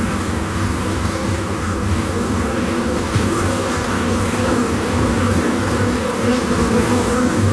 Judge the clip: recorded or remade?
remade